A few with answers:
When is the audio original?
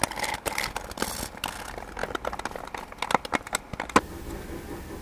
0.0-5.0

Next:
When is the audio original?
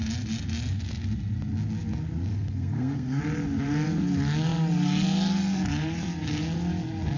0.0-2.3; 3.2-7.2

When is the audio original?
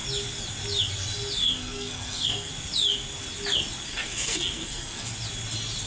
0.0-1.4; 2.5-3.9; 5.1-5.9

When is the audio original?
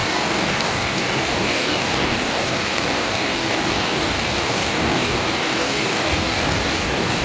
none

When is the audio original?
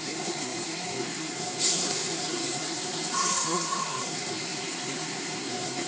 none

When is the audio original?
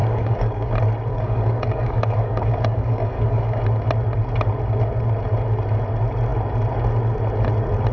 0.7-1.1; 3.6-7.9